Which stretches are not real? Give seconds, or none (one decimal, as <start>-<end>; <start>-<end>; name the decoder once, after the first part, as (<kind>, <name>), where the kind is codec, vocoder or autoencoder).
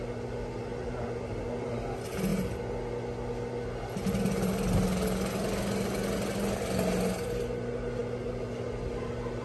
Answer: none